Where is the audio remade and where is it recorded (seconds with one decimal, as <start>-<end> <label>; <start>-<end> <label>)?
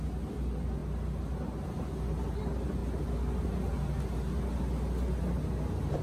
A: 0.0-6.0 recorded